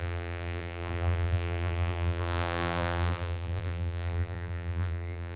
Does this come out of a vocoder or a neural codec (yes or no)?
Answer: yes